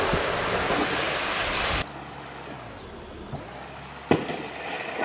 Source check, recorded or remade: recorded